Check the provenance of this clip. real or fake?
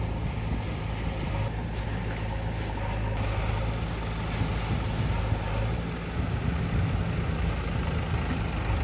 real